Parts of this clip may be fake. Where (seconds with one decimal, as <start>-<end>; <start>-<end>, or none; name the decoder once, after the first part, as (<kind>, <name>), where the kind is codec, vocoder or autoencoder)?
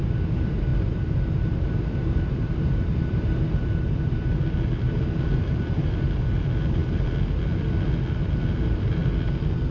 0.0-6.8 (vocoder, BigVGAN v2); 7.5-9.0